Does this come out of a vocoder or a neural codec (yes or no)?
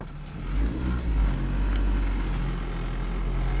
no